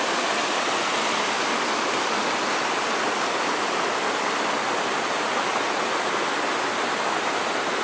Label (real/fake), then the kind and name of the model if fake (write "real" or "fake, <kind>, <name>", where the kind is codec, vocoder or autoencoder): real